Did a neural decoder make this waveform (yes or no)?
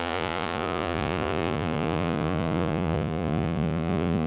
yes